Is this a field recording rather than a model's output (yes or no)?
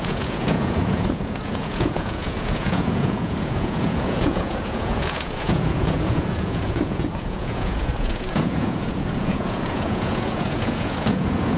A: no